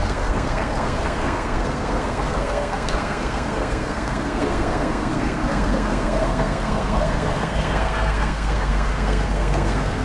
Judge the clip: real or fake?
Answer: fake